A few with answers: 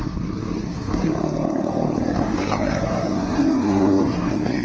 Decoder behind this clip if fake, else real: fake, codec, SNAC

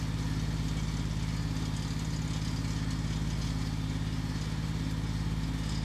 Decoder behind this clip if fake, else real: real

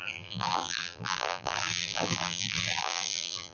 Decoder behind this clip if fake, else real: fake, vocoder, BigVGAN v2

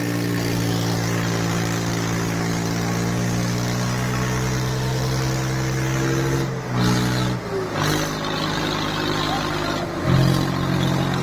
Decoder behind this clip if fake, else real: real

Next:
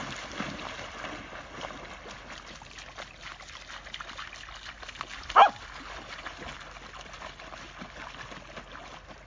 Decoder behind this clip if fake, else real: real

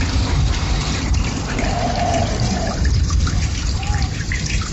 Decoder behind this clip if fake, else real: fake, vocoder, BigVGAN v2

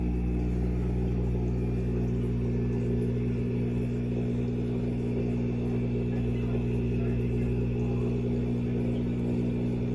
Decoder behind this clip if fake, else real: real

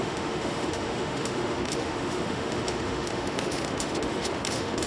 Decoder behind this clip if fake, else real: fake, autoencoder, DAC-VAE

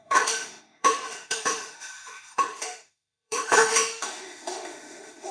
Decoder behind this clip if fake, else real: fake, autoencoder, DAC-VAE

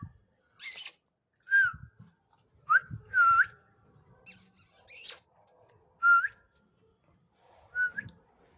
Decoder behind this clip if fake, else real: real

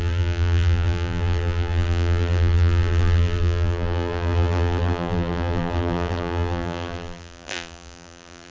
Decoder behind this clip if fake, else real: fake, vocoder, BigVGAN v2